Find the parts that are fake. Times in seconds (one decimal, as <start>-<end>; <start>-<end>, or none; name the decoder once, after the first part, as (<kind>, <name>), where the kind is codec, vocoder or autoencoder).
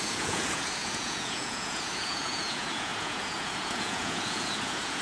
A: 0.0-5.0 (vocoder, Vocos)